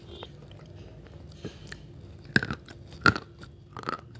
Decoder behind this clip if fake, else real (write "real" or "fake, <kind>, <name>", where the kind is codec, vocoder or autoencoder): real